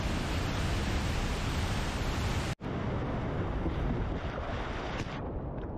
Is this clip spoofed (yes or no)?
no